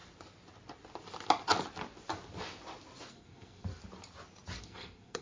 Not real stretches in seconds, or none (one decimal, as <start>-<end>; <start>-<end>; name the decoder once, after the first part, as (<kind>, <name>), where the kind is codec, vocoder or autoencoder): 3.1-3.7 (codec, SNAC); 4.6-5.2